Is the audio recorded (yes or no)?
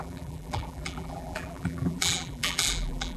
no